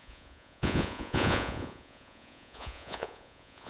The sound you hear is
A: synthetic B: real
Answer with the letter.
A